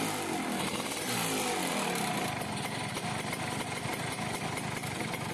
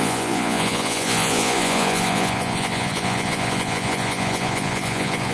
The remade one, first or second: second